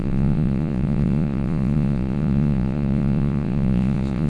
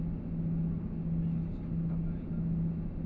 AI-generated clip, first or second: first